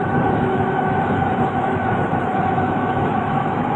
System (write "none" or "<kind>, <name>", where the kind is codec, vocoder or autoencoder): autoencoder, DAC-VAE